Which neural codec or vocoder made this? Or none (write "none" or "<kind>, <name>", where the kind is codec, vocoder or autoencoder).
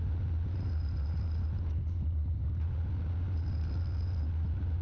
none